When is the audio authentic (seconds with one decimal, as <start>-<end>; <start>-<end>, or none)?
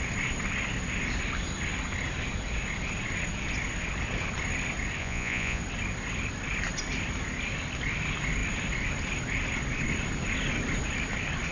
0.0-5.0; 5.6-11.5